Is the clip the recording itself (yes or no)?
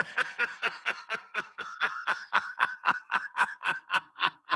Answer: no